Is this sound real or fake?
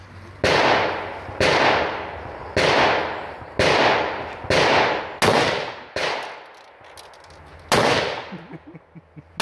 real